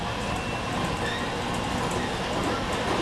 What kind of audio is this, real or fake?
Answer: real